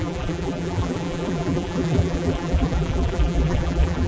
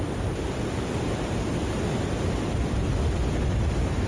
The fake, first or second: first